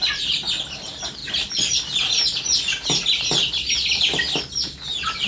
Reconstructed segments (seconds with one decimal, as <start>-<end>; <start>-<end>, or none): none